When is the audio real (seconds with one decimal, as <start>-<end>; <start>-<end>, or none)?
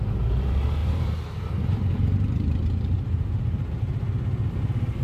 0.0-0.8; 3.8-5.0